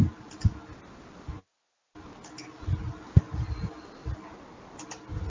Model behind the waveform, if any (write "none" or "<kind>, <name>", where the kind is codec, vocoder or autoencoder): none